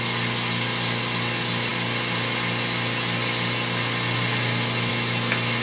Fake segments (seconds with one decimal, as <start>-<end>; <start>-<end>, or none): none